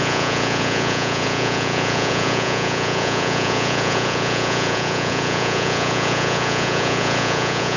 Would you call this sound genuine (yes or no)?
no